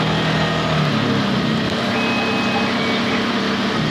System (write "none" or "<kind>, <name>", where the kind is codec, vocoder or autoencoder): none